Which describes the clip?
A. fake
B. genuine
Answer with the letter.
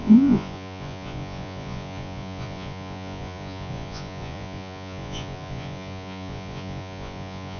A